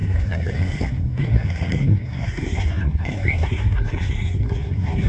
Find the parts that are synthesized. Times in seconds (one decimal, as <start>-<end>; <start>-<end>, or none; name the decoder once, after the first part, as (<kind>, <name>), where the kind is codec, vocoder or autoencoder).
0.0-5.1 (codec, SNAC)